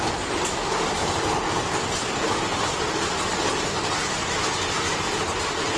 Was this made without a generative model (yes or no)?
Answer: yes